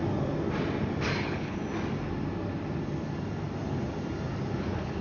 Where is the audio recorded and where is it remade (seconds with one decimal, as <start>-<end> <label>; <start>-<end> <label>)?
0.0-1.2 recorded; 1.2-1.6 remade; 1.6-4.6 recorded; 4.6-5.0 remade